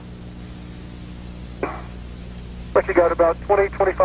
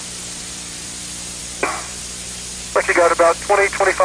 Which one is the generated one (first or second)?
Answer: second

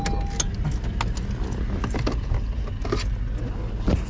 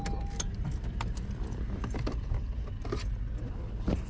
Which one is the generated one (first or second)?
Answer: second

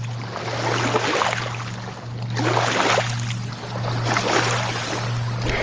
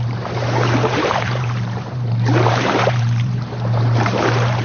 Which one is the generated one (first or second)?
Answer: second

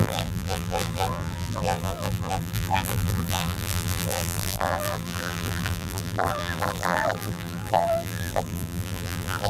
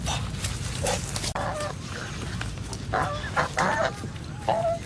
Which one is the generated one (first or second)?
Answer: first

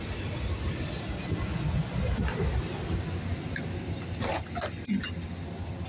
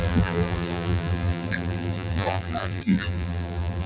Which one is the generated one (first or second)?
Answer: second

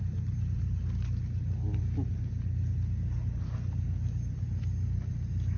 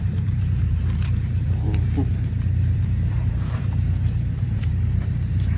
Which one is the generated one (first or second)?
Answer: second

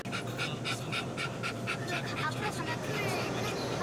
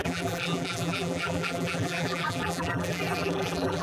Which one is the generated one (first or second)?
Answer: second